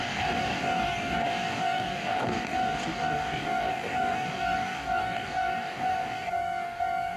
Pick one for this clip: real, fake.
fake